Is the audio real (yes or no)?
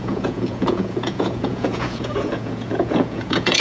no